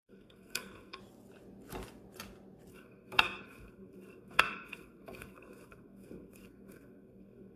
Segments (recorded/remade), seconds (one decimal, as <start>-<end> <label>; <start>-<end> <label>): 0.0-1.0 remade; 1.0-2.7 recorded; 2.7-7.6 remade